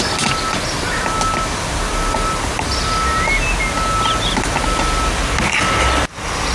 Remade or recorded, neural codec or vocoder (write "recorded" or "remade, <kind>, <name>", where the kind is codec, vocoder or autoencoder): recorded